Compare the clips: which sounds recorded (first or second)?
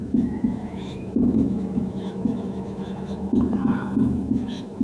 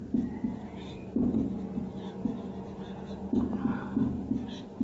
second